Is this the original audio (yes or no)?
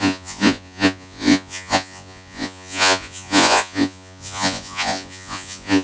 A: no